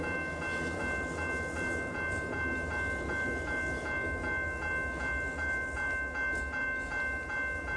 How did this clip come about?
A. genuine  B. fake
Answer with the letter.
A